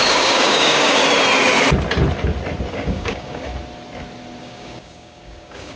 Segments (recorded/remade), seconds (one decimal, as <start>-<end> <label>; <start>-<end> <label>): 0.0-1.0 remade; 1.0-2.7 recorded; 2.7-3.5 remade; 3.5-4.4 recorded; 4.4-5.8 remade